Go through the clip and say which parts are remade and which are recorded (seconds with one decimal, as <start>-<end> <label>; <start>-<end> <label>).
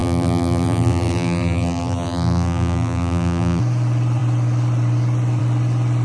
0.0-3.6 remade; 3.6-6.0 recorded